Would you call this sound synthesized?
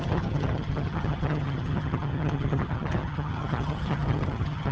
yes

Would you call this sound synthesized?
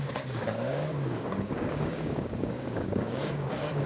yes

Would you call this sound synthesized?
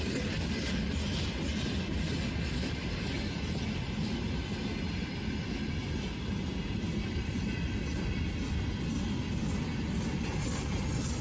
yes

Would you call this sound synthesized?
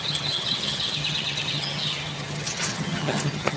yes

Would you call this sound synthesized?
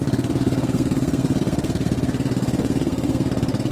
yes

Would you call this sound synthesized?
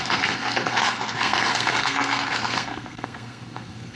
yes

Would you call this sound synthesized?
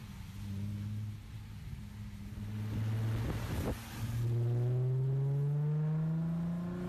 no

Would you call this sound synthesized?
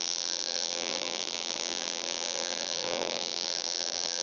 yes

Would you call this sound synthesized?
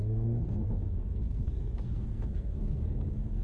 yes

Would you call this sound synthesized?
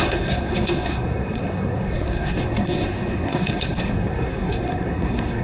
yes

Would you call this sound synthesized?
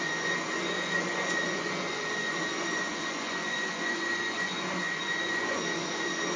yes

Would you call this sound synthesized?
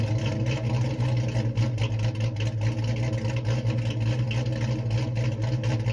no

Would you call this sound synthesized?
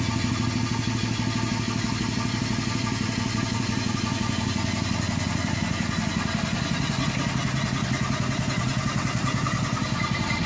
no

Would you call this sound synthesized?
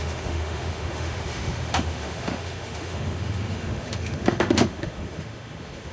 yes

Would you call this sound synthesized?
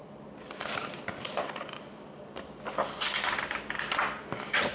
yes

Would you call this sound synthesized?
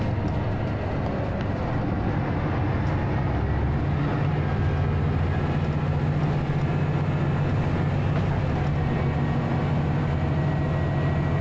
no